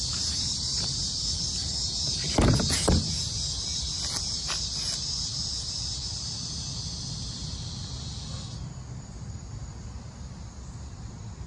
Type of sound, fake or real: real